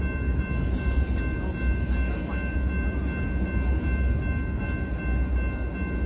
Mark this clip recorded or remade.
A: recorded